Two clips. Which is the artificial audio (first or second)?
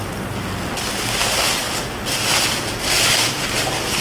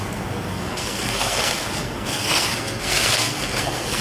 second